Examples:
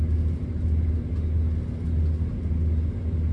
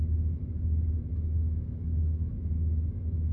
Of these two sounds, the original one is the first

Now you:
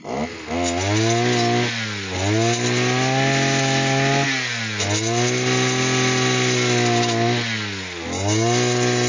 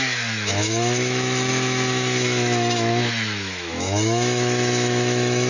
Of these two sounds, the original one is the first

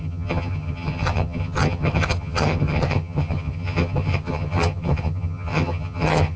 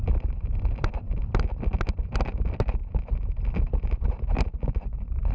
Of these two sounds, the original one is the second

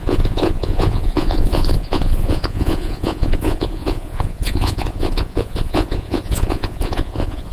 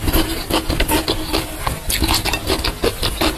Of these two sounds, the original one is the second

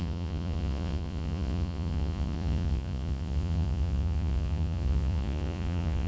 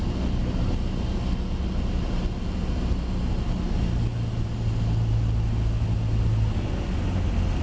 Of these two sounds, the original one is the second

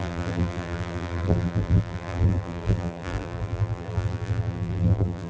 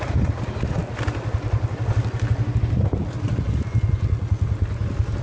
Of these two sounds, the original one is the second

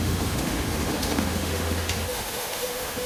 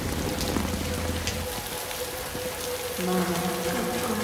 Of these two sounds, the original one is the second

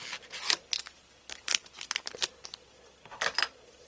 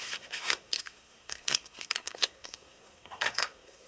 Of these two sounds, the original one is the first